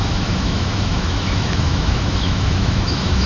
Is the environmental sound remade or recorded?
remade